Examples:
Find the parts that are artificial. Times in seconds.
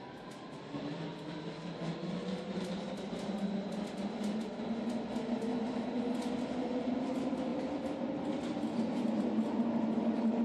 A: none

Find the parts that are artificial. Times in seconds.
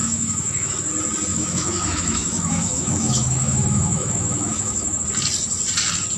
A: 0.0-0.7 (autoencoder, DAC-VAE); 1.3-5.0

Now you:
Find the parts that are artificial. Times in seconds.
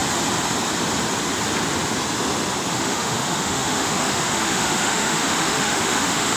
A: 2.7-6.4 (autoencoder, DAC-VAE)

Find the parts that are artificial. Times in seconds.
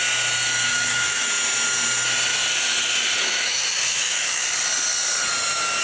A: 0.7-1.3 (autoencoder, DAC-VAE); 3.2-4.4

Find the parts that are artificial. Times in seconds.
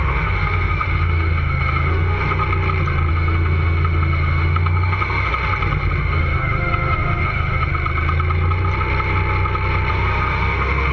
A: 0.0-2.4 (autoencoder, DAC-VAE); 3.1-5.3; 6.0-7.7; 9.9-10.9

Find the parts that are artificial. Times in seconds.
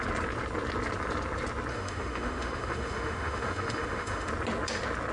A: 1.7-4.3 (autoencoder, DAC-VAE)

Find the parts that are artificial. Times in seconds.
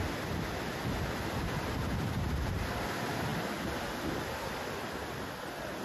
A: none